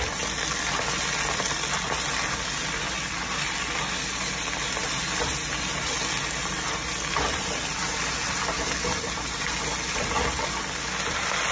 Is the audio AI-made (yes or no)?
no